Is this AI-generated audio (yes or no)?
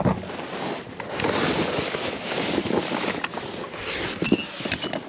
no